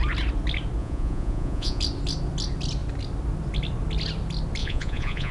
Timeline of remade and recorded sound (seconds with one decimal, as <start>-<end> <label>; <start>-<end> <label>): 0.0-0.8 recorded; 0.8-1.8 remade; 1.8-4.6 recorded; 4.6-5.3 remade